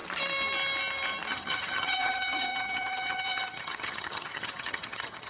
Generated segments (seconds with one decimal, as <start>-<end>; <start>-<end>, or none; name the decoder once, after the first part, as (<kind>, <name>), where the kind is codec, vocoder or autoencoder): 1.3-5.3 (vocoder, HiFi-GAN)